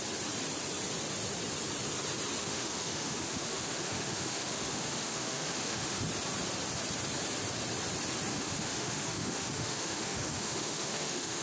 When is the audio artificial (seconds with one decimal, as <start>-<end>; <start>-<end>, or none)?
2.4-6.0; 8.3-11.4